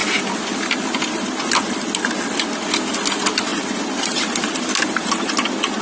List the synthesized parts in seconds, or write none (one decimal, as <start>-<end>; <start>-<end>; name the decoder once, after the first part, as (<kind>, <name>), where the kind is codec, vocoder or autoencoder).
3.5-4.7 (vocoder, BigVGAN v2)